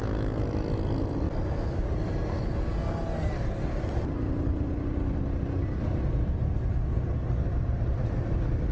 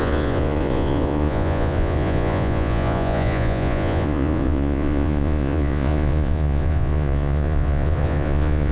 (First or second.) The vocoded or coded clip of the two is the second